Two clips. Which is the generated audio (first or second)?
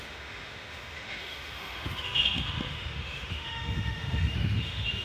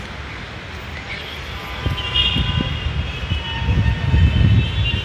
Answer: first